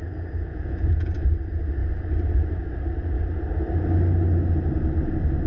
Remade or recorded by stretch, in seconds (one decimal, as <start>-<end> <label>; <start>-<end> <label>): 0.0-0.5 recorded; 0.5-1.1 remade; 1.1-5.5 recorded